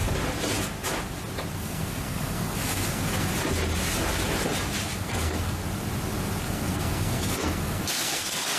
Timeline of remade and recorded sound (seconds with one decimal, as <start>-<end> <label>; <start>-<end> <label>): 0.0-1.5 recorded; 1.5-3.3 remade; 3.3-4.9 recorded; 4.9-5.6 remade; 5.6-6.4 recorded; 6.4-8.6 remade